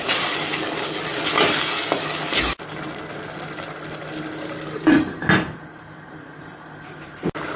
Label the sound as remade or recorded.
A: recorded